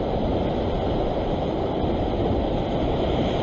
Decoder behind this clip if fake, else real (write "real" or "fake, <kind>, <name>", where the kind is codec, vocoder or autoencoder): fake, vocoder, BigVGAN v2